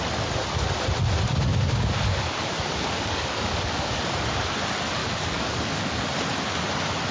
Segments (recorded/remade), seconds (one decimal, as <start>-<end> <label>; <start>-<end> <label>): 0.0-1.5 recorded; 1.5-4.0 remade; 4.0-5.0 recorded; 5.0-6.0 remade; 6.0-7.1 recorded